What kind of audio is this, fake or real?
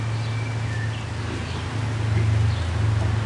real